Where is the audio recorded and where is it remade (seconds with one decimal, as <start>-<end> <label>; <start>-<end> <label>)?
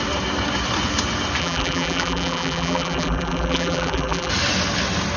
0.0-1.4 recorded; 1.4-4.3 remade; 4.3-5.2 recorded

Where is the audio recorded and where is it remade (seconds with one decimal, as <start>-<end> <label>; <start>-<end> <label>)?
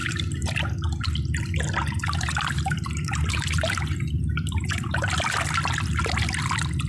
0.0-0.5 remade; 0.5-1.8 recorded; 1.8-5.1 remade; 5.1-6.9 recorded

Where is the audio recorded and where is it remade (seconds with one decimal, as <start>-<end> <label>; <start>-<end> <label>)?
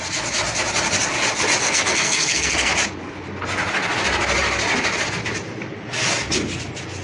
0.0-1.6 recorded; 1.6-2.7 remade; 2.7-7.0 recorded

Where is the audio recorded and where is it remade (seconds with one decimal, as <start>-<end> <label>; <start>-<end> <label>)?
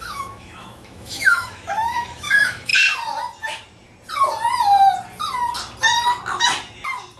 0.0-2.7 remade; 2.7-7.2 recorded